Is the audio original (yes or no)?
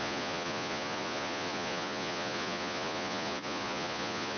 no